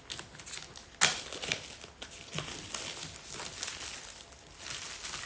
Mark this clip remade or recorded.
recorded